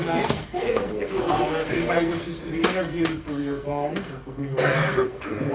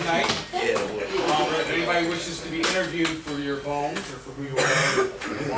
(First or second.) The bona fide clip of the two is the second